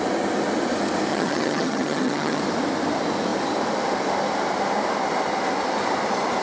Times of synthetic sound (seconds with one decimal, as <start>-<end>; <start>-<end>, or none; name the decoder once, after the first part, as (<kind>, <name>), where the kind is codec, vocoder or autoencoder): 1.1-2.4 (vocoder, HiFi-GAN)